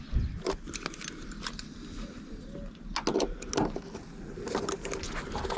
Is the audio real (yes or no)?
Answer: yes